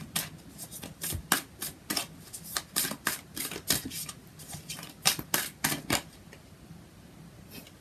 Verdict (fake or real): real